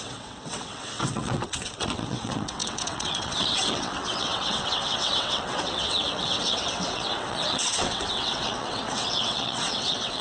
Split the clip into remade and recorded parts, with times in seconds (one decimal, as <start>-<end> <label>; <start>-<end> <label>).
0.0-10.2 remade